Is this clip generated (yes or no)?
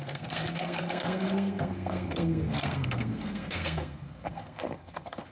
yes